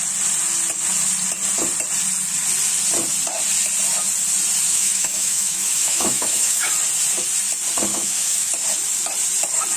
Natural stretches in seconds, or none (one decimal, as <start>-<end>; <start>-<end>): 0.0-4.7; 6.7-7.9; 8.5-9.8